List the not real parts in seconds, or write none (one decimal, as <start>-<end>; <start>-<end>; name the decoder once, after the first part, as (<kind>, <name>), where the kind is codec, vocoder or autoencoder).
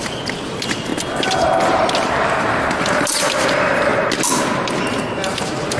0.0-0.9 (vocoder, BigVGAN v2); 1.7-3.9; 4.8-5.8